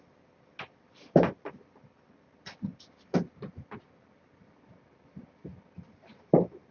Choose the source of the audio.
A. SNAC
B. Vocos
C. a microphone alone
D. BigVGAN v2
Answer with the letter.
C